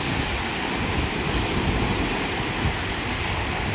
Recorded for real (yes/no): yes